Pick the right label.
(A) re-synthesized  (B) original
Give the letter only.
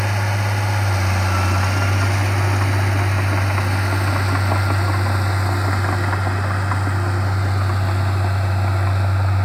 B